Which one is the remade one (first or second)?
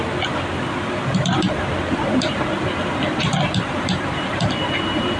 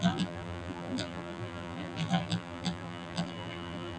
second